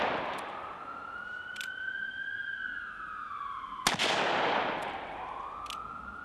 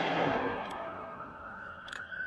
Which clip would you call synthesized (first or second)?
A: second